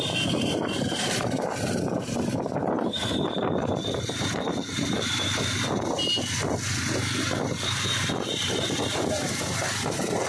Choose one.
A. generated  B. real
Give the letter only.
A